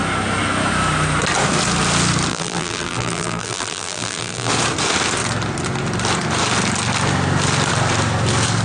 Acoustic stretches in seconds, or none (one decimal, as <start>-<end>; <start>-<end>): 0.0-2.3; 4.5-8.6